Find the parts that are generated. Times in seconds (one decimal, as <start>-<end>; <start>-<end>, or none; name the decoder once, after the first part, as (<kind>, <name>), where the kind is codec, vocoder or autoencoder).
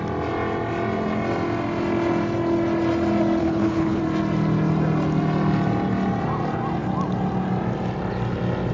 3.4-4.0 (codec, HILCodec)